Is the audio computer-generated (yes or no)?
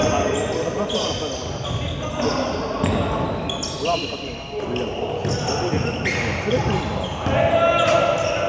no